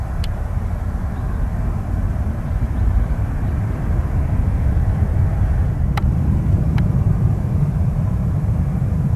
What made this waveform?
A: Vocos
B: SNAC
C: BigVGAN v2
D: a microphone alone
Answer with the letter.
C